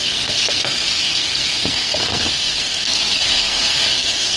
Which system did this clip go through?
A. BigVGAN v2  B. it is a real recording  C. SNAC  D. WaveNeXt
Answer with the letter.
C